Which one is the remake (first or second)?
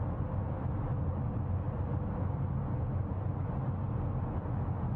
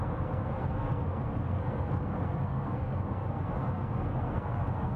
second